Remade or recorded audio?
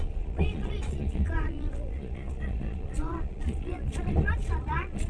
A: remade